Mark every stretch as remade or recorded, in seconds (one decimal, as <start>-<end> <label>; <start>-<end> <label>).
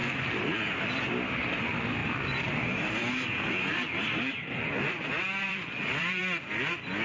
0.0-2.0 recorded; 2.0-6.2 remade; 6.2-7.0 recorded